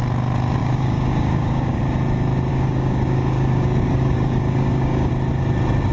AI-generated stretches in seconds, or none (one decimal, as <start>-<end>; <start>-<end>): 0.6-1.8; 2.5-5.1